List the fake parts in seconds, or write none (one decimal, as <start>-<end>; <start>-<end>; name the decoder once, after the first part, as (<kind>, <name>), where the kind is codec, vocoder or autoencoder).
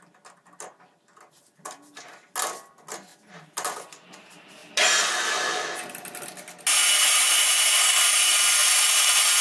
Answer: none